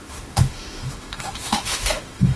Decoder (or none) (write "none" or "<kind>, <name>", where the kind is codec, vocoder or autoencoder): autoencoder, DAC-VAE